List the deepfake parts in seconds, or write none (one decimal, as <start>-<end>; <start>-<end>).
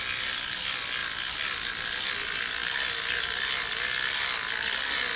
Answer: none